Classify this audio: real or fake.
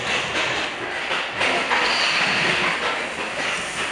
real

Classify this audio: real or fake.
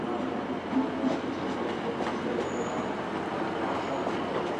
real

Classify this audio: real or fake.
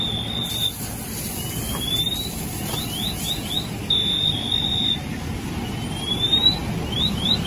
real